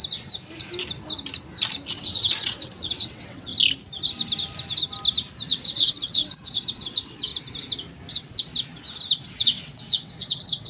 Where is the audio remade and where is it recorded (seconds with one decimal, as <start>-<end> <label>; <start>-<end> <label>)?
0.0-1.9 recorded; 1.9-3.5 remade; 3.5-5.5 recorded; 5.5-7.3 remade; 7.3-8.1 recorded; 8.1-8.5 remade; 8.5-9.2 recorded; 9.2-10.7 remade